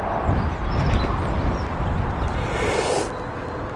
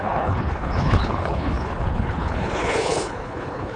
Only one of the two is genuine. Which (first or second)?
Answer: first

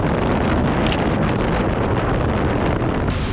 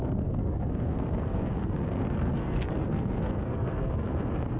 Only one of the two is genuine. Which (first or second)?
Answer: first